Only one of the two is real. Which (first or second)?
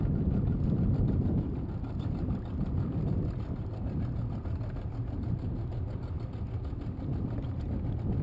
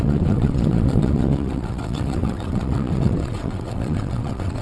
first